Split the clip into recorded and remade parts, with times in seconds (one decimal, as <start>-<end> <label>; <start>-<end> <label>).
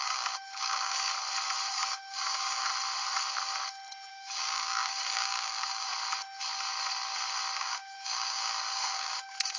0.0-1.1 remade; 1.1-1.7 recorded; 1.7-2.7 remade; 2.7-4.1 recorded; 4.1-5.9 remade; 5.9-7.6 recorded; 7.6-9.6 remade